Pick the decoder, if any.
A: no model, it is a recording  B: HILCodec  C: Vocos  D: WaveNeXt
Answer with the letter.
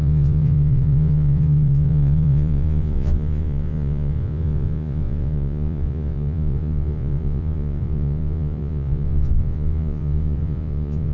C